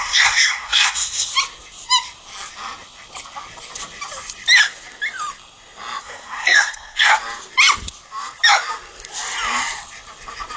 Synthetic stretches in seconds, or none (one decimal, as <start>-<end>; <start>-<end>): 0.0-1.3; 6.0-7.1